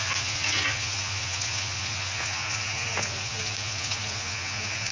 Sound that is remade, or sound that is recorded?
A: remade